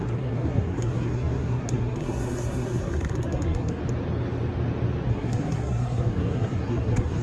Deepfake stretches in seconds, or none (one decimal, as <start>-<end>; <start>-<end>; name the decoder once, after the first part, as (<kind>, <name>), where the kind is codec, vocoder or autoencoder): 0.0-3.8 (codec, SNAC); 5.1-7.2